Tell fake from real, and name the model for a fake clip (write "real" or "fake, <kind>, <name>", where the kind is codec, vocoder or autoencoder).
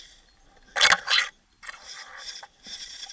real